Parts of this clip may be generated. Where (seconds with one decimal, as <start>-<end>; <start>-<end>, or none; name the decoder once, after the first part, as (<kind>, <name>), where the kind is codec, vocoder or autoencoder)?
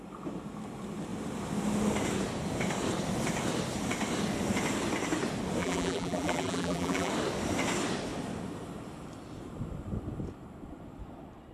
5.6-7.1 (vocoder, BigVGAN v2)